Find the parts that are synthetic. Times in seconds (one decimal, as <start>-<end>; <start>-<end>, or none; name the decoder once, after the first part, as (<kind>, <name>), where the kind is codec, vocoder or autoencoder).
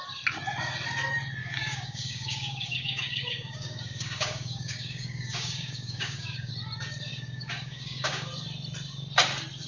1.4-6.5 (codec, DAC); 7.1-8.3